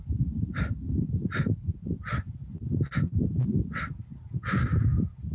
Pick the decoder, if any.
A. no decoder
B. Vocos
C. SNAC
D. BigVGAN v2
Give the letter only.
A